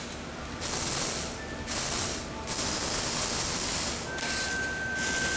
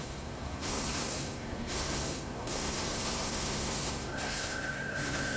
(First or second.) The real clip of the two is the first